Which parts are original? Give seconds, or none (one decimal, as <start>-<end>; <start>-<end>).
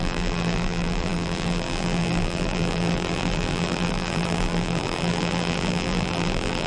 none